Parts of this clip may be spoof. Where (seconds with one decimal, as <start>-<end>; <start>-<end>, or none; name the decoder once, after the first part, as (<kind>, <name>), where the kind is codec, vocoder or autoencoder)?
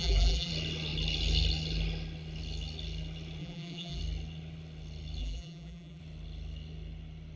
0.0-0.5 (vocoder, BigVGAN v2); 3.4-4.0; 5.2-6.0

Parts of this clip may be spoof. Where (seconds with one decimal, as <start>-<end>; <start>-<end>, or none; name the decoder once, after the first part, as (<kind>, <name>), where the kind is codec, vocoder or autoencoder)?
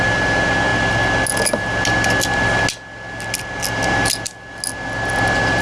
none